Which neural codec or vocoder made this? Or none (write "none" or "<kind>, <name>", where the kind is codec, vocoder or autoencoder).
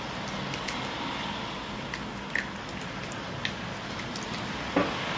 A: none